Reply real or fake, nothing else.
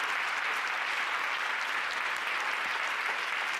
real